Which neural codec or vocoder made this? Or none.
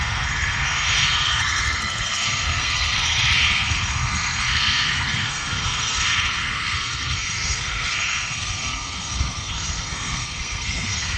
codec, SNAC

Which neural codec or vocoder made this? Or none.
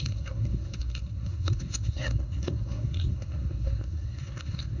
codec, SNAC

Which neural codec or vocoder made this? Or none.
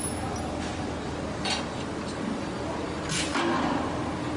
none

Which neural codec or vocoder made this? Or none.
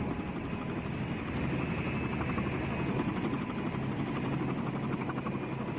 none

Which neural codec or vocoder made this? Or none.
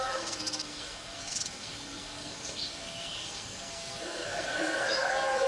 codec, SNAC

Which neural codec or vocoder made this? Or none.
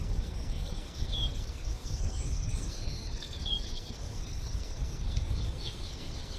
codec, SNAC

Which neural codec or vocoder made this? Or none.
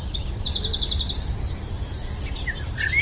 none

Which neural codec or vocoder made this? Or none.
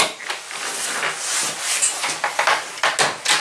none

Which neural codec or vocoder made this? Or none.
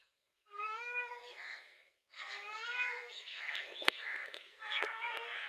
codec, SNAC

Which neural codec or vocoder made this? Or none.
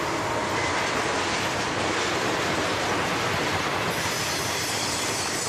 none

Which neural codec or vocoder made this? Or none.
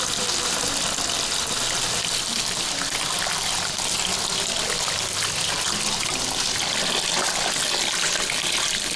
none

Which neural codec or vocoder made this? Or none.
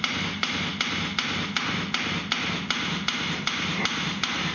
none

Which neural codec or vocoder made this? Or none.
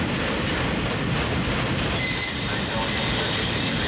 none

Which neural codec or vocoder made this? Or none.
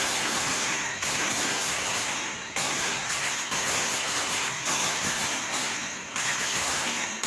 codec, SNAC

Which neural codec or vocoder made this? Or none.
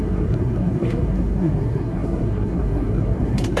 codec, SNAC